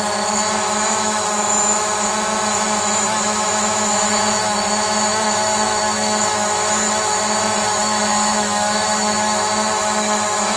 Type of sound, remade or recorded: remade